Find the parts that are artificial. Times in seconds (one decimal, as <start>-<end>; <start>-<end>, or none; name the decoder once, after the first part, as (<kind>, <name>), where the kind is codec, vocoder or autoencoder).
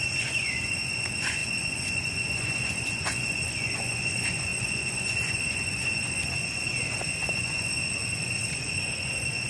0.0-9.5 (vocoder, Vocos)